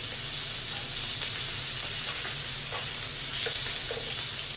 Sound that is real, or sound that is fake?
real